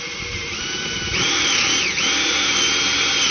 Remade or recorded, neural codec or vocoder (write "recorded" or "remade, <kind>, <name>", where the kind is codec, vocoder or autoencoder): recorded